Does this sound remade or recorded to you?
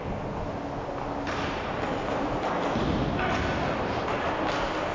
recorded